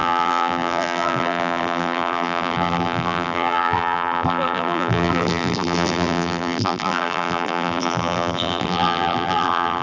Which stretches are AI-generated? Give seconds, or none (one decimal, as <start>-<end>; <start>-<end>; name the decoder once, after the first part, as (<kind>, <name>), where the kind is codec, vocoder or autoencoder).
0.0-9.8 (vocoder, BigVGAN v2)